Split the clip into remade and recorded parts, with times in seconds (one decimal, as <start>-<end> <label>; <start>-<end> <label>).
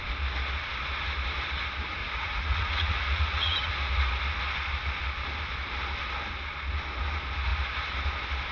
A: 0.0-2.0 recorded; 2.0-3.7 remade; 3.7-8.5 recorded